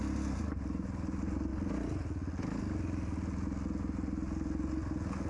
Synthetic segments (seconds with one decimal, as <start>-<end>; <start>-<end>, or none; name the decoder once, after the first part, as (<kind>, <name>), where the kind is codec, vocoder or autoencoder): none